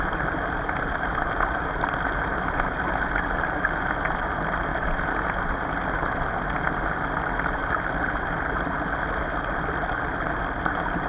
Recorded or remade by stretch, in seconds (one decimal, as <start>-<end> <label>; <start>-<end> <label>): 0.0-11.1 recorded